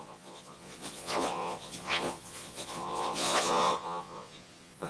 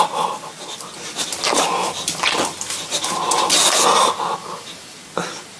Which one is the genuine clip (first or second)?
second